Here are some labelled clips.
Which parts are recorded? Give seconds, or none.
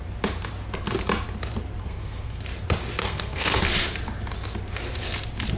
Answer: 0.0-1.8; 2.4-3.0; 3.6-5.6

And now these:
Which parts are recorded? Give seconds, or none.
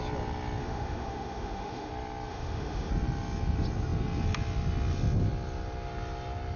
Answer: 0.0-0.6; 1.9-2.3; 2.9-6.6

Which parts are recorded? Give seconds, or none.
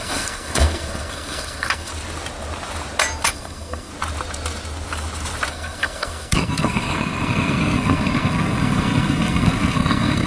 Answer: 1.9-3.3; 3.9-5.5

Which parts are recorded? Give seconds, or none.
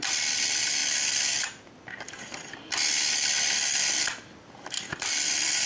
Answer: 0.0-5.7